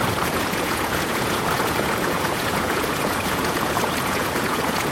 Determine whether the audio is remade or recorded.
remade